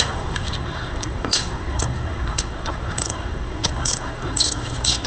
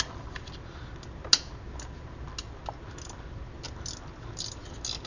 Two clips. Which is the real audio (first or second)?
second